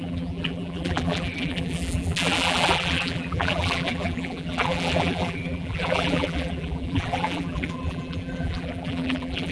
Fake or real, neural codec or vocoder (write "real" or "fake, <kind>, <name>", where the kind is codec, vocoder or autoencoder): fake, vocoder, BigVGAN v2